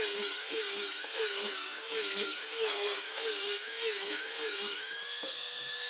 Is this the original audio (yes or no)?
no